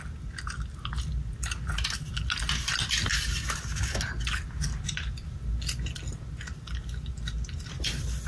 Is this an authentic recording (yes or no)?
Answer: yes